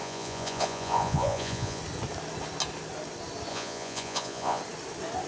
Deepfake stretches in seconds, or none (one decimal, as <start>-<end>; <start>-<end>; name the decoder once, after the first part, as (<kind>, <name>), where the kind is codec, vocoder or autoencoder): 0.0-1.8 (vocoder, Vocos); 3.5-4.6